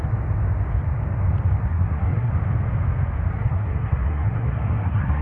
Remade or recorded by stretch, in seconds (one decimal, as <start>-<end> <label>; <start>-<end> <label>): 0.0-1.6 recorded; 1.6-2.3 remade; 2.3-3.3 recorded; 3.3-5.2 remade